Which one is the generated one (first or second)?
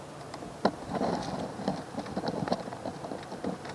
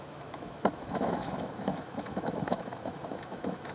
second